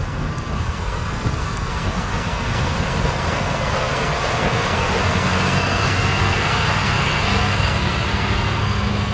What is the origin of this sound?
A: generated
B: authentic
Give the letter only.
A